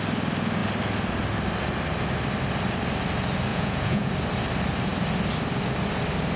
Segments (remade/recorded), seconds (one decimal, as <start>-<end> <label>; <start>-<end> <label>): 0.0-3.5 recorded; 3.5-4.1 remade; 4.1-6.4 recorded